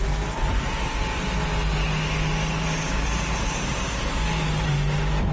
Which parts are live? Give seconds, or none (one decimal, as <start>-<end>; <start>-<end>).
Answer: 0.0-5.3